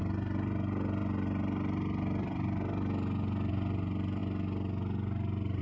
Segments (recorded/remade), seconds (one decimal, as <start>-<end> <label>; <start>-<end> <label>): 0.0-5.6 recorded